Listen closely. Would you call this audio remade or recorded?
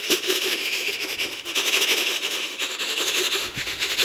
remade